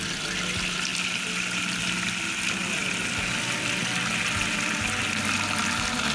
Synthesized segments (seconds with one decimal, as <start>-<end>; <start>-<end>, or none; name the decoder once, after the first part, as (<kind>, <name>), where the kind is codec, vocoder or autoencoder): none